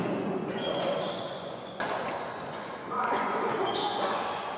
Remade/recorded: remade